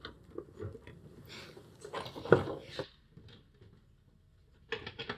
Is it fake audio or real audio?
real